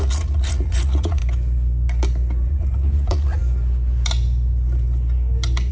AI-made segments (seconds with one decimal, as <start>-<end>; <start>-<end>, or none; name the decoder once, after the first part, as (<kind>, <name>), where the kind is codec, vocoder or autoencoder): 0.0-1.2 (vocoder, Vocos); 2.5-3.4